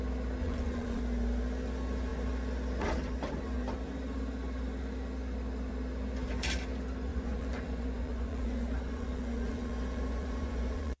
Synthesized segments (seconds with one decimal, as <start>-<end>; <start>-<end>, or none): 0.4-1.0; 7.1-11.0